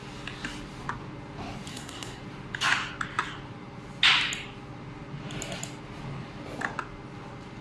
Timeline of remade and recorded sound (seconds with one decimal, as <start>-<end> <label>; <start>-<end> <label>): 0.0-1.7 recorded; 1.7-2.2 remade; 2.2-7.6 recorded